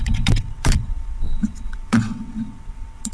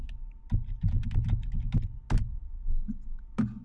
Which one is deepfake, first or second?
first